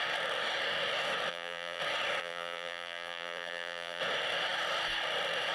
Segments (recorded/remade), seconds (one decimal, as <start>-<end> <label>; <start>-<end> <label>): 0.0-1.3 recorded; 1.3-1.8 remade; 1.8-2.2 recorded; 2.2-4.0 remade; 4.0-5.5 recorded